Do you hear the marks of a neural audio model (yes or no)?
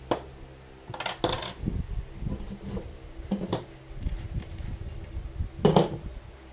no